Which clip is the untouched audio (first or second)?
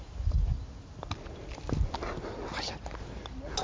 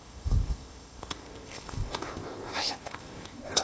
first